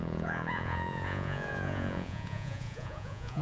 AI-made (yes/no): yes